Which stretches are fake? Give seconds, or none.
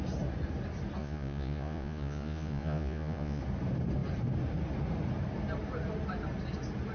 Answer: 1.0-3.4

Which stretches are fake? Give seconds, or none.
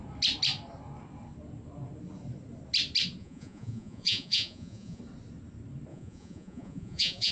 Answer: 3.2-5.0; 5.9-7.3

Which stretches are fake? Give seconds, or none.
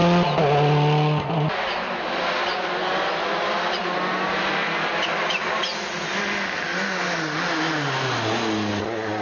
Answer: none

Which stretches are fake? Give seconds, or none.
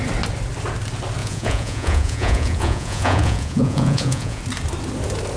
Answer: 1.2-4.4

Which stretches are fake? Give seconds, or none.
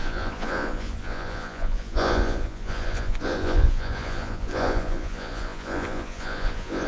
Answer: 0.0-6.9